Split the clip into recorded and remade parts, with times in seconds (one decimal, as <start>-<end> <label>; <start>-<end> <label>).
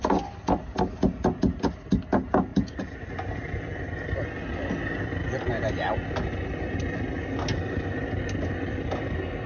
0.0-2.5 recorded; 2.5-3.1 remade; 3.1-9.5 recorded